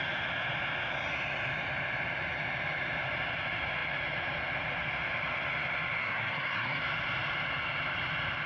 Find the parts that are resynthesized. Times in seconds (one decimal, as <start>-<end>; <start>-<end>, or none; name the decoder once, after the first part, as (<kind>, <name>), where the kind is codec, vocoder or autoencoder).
6.0-6.8 (codec, SNAC)